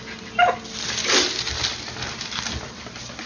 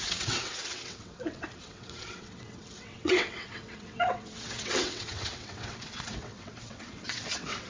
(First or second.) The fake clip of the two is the second